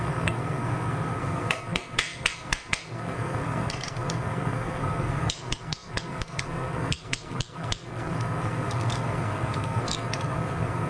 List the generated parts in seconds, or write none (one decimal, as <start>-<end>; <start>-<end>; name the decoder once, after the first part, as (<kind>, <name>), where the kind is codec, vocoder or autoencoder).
0.0-10.9 (codec, SNAC)